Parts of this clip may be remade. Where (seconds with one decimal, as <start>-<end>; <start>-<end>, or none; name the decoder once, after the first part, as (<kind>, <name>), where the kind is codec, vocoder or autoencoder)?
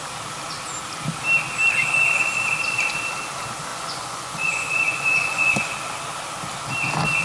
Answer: 3.7-5.7 (vocoder, Vocos)